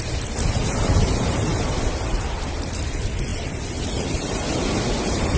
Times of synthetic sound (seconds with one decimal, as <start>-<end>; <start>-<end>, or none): none